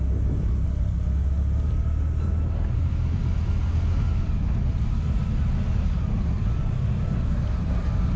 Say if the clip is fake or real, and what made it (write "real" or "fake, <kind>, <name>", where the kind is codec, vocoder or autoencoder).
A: real